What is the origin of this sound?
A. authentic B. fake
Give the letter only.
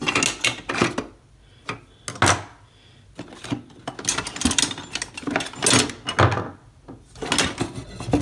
A